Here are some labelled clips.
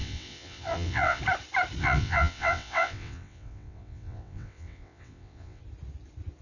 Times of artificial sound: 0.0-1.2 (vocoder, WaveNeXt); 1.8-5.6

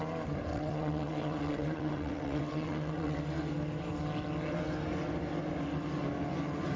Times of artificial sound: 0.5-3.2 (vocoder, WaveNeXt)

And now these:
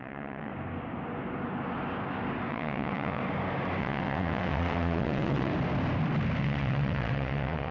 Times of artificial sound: 0.0-0.5 (vocoder, WaveNeXt); 2.5-3.2; 3.8-5.5; 6.4-7.7

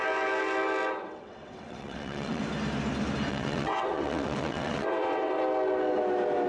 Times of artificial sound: 1.0-2.4 (vocoder, WaveNeXt); 3.3-5.4